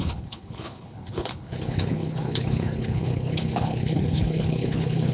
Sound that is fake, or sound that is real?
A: fake